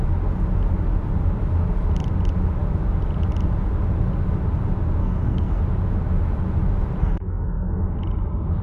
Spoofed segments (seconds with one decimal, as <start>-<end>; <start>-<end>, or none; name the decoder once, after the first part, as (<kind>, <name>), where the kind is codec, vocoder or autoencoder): 5.0-5.6 (codec, SNAC); 7.0-7.8